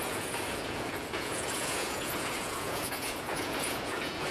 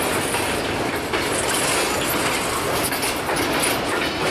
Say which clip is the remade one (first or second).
first